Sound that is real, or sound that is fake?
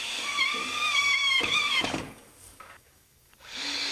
fake